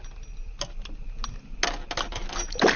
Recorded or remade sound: recorded